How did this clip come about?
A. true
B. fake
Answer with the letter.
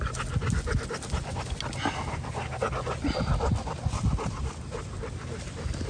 A